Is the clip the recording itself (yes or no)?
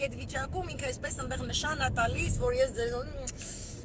no